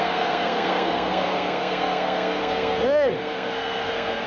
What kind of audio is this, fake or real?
fake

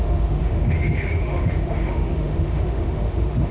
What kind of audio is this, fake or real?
fake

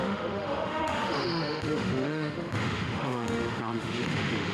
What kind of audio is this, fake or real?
fake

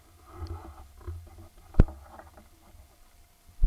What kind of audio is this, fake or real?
real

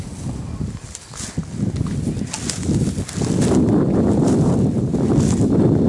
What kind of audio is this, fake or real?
real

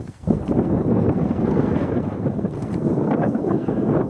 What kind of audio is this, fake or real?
fake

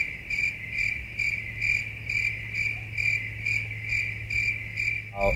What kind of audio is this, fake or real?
real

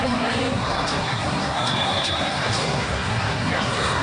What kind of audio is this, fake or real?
fake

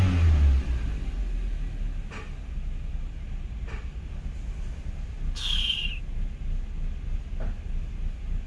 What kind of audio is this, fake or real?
real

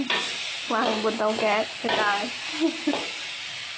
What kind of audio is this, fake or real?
real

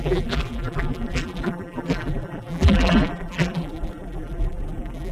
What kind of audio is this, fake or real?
fake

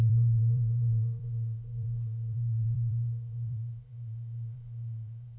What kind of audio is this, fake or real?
fake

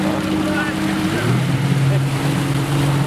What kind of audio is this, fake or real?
real